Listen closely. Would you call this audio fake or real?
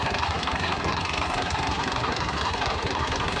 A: fake